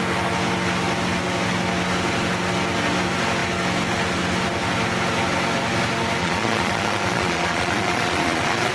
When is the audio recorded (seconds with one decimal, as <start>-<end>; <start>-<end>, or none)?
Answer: 0.0-6.2